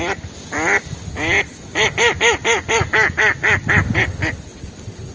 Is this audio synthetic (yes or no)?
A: no